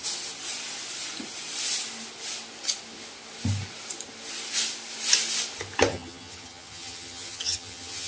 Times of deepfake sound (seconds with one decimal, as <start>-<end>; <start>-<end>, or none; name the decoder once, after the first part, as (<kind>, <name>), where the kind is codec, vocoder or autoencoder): 5.9-8.1 (vocoder, HiFi-GAN)